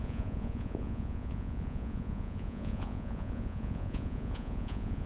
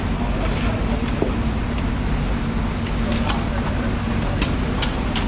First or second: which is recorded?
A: second